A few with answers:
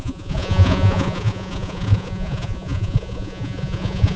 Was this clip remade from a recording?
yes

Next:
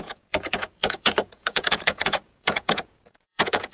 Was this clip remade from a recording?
yes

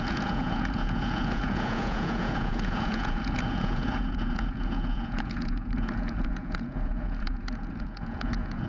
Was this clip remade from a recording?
yes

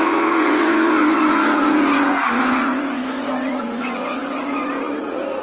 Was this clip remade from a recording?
yes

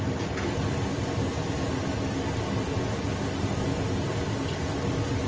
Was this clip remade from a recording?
no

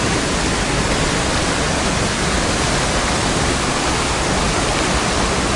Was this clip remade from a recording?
no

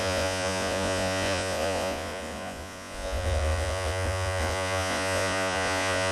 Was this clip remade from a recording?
yes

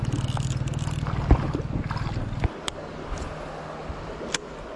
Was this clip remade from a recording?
no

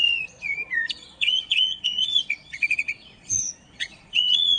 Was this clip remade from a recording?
yes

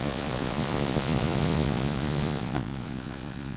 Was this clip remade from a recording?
yes